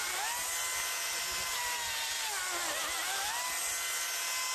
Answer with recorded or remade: recorded